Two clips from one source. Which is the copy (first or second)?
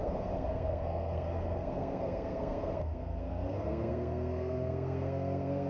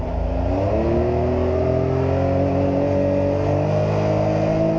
first